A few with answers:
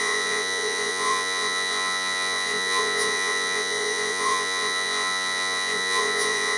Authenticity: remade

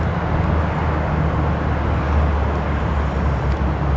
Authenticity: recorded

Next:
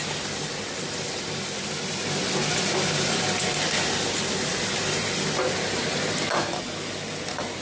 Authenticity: recorded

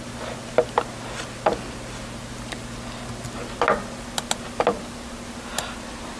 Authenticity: recorded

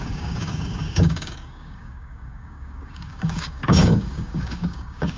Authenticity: remade